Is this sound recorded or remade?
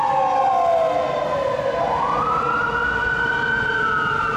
recorded